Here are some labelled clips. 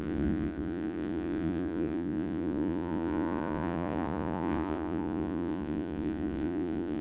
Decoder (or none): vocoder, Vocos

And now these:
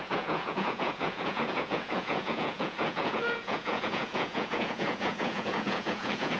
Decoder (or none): vocoder, Vocos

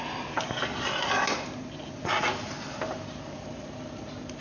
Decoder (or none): none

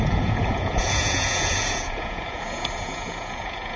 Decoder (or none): vocoder, Vocos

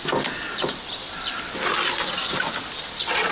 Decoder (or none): none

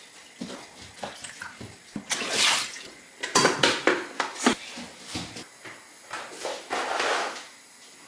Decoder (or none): none